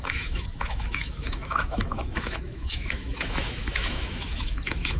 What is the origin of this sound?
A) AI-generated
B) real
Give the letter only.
A